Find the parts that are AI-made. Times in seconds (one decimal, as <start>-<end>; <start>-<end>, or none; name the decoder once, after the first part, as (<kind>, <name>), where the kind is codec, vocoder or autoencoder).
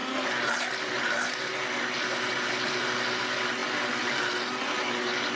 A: none